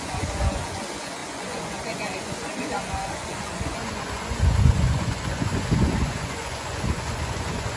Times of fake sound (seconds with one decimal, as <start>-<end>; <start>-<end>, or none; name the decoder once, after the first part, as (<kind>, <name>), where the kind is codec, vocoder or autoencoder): 0.0-7.8 (vocoder, Vocos)